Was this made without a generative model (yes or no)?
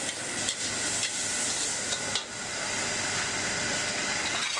yes